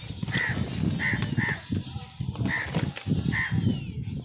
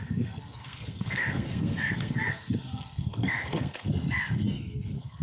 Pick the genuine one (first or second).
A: first